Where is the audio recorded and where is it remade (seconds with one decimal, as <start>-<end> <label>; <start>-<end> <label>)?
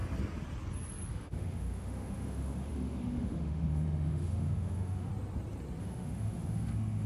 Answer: 0.0-1.1 recorded; 1.1-5.1 remade; 5.1-5.8 recorded; 5.8-7.1 remade